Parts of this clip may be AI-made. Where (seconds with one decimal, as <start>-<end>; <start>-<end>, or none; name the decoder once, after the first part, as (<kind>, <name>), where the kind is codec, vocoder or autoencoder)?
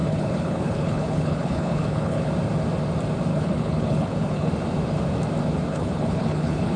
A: 0.0-2.3 (codec, HILCodec); 3.3-4.5; 5.7-6.8